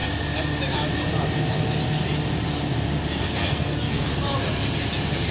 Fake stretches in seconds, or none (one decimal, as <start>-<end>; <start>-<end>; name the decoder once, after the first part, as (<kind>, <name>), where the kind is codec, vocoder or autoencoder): 3.2-4.1 (codec, SNAC)